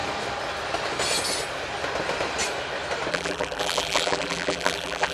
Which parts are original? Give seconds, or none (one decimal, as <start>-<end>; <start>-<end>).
0.0-3.1